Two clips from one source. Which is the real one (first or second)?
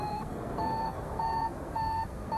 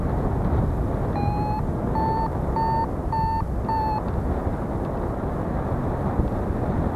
second